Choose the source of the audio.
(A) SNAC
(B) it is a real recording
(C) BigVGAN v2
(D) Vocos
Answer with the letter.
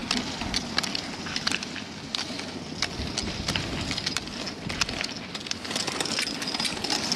B